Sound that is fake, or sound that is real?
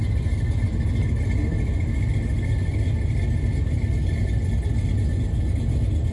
real